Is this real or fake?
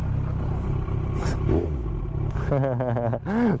real